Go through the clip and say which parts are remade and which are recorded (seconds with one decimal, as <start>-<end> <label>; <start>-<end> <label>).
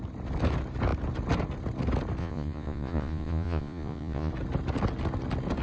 0.0-2.2 recorded; 2.2-4.3 remade; 4.3-5.6 recorded